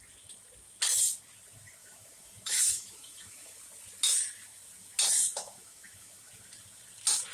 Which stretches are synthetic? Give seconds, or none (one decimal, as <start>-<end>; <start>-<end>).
1.8-3.6; 5.3-6.3